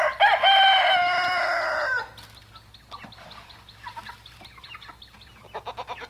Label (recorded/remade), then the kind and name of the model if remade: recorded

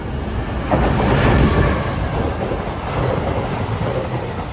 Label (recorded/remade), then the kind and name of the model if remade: recorded